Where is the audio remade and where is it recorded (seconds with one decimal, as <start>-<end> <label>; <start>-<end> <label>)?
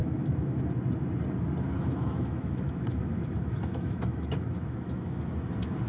0.0-0.6 remade; 0.6-1.8 recorded; 1.8-5.3 remade; 5.3-5.9 recorded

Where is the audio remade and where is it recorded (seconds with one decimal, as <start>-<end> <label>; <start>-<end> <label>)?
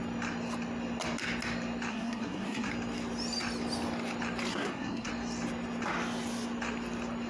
0.0-1.9 recorded; 1.9-2.7 remade; 2.7-4.5 recorded; 4.5-5.1 remade; 5.1-7.3 recorded